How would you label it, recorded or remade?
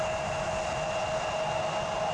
recorded